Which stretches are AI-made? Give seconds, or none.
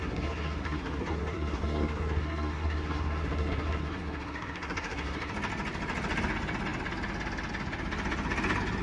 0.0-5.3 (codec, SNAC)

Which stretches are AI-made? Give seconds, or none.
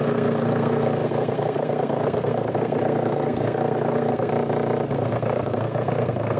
0.0-4.3 (codec, SNAC); 4.9-6.4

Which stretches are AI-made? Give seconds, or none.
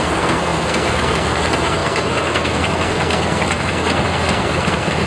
0.0-5.1 (codec, SNAC)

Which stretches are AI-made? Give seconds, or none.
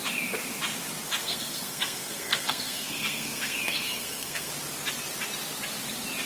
1.2-4.5 (codec, SNAC)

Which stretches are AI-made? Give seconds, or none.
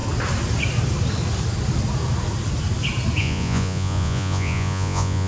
3.2-5.3 (vocoder, Vocos)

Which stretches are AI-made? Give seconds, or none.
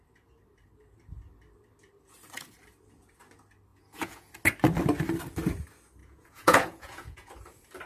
3.7-4.3 (vocoder, Vocos); 6.0-7.3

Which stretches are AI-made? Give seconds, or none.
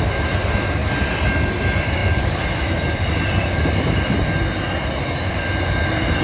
none